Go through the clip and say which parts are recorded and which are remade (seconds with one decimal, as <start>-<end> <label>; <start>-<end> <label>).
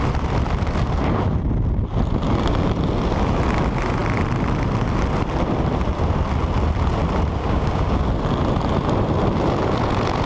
0.0-7.4 recorded; 7.4-8.0 remade; 8.0-10.3 recorded